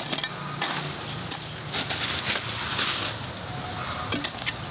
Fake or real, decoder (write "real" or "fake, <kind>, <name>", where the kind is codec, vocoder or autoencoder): real